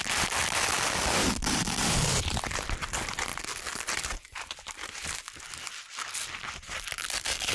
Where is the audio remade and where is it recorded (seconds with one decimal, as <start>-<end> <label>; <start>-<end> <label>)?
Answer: 0.0-3.3 remade; 3.3-4.0 recorded; 4.0-7.5 remade